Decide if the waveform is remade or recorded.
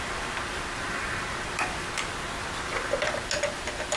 recorded